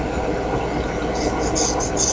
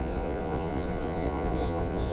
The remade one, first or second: second